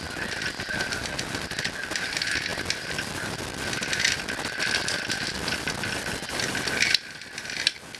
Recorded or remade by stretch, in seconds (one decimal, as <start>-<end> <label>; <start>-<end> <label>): 0.0-8.0 recorded